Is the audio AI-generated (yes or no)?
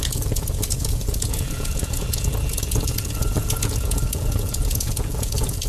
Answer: yes